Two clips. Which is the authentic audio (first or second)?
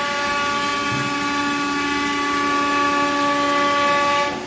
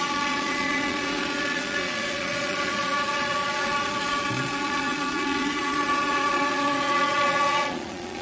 first